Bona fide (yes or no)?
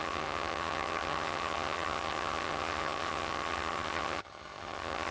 no